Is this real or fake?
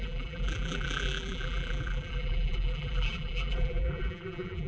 fake